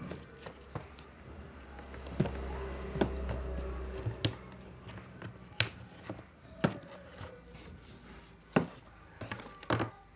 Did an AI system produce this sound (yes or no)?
no